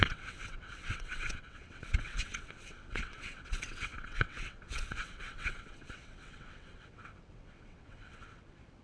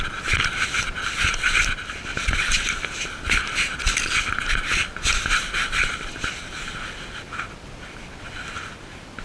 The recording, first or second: second